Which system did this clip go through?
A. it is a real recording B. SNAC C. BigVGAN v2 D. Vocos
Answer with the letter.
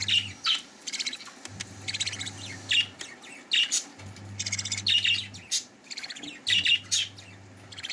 A